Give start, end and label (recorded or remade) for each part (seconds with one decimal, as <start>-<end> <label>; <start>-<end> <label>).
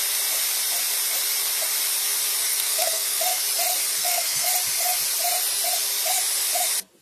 0.0-2.5 recorded; 2.5-3.4 remade; 3.4-3.9 recorded; 3.9-4.5 remade; 4.5-7.0 recorded